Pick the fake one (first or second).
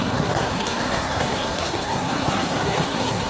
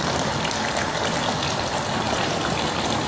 first